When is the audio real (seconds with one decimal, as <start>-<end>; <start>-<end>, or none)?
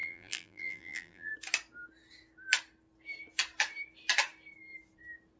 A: 1.3-5.4